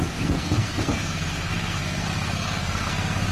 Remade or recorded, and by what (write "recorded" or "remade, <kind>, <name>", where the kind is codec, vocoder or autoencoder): remade, codec, SNAC